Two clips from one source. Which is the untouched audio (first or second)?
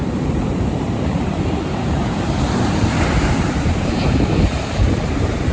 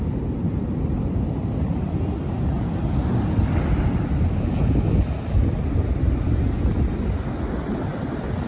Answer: second